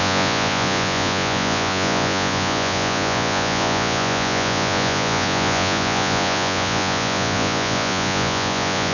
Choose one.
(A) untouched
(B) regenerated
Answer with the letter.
B